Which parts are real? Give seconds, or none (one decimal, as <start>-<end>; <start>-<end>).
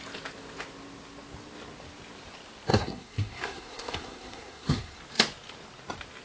0.0-2.7; 5.0-6.2